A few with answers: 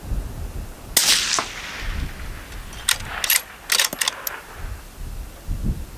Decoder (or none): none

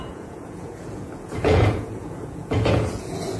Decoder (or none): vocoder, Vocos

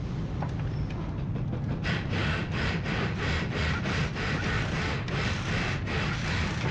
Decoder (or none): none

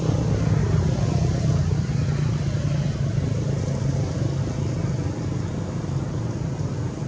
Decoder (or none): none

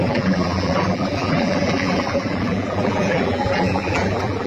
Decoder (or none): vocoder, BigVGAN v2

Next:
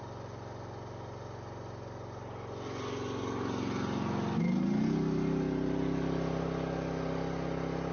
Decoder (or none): none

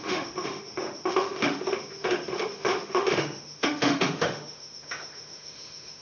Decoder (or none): autoencoder, DAC-VAE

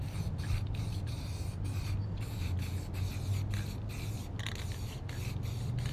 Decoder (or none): none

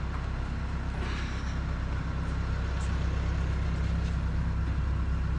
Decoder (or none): none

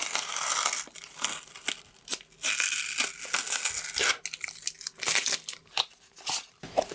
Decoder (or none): none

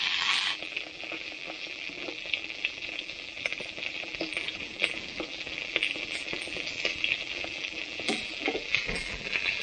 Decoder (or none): vocoder, BigVGAN v2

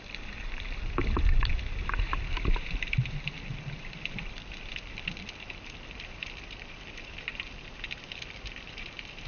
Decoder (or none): vocoder, BigVGAN v2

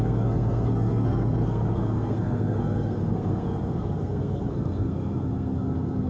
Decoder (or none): codec, SNAC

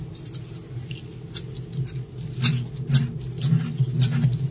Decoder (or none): none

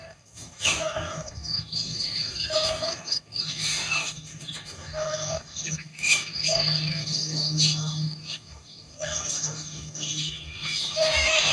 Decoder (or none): codec, DAC